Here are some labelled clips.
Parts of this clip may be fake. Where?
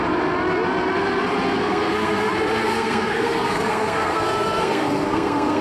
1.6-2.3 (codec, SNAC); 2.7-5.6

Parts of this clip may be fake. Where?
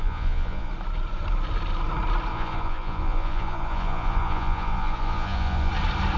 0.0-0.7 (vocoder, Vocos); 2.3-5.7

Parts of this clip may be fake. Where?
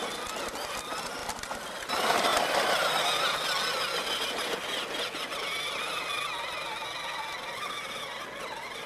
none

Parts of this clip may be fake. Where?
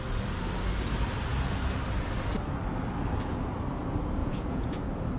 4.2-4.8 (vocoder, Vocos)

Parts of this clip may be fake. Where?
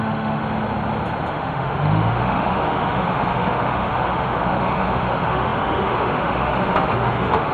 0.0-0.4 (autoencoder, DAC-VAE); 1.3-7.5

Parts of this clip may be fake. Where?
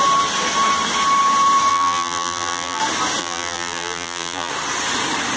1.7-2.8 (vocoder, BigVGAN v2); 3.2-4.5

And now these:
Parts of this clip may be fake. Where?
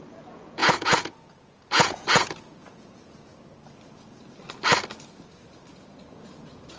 0.0-3.3 (vocoder, Vocos); 5.7-6.8